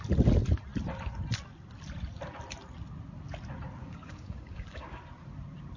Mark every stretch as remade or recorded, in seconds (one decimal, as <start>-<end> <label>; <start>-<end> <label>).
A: 0.0-3.8 recorded; 3.8-5.0 remade; 5.0-5.8 recorded